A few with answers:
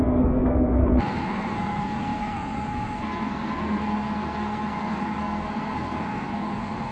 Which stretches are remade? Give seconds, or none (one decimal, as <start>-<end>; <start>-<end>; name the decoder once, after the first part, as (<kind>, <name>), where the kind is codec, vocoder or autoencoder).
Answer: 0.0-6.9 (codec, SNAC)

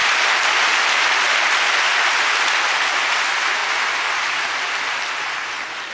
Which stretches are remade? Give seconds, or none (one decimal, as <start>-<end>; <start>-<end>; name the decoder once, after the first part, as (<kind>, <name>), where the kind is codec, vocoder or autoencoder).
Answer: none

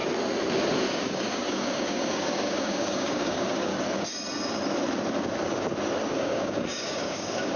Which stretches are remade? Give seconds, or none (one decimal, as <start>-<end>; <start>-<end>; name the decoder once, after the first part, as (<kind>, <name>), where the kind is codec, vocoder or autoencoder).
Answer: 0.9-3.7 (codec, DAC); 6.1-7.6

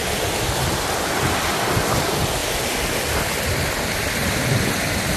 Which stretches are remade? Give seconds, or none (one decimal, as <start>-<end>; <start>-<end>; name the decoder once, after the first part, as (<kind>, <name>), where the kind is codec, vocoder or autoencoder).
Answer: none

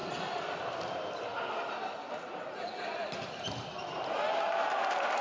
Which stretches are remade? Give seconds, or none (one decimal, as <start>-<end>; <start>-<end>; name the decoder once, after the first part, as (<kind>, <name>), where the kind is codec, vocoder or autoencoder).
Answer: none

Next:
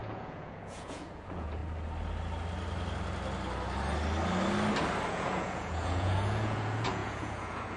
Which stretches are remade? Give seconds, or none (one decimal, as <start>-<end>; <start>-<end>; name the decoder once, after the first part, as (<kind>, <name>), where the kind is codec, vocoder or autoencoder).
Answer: 0.0-1.6 (vocoder, Vocos); 5.1-7.8

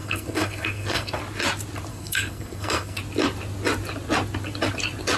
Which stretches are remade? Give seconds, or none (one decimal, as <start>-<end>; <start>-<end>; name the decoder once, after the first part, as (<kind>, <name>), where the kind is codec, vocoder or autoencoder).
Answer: 0.0-1.2 (codec, SNAC); 1.9-3.0